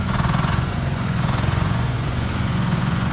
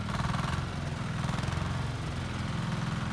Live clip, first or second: second